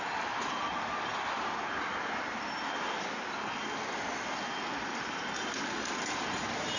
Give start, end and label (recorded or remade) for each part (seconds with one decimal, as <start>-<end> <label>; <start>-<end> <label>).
0.0-6.8 recorded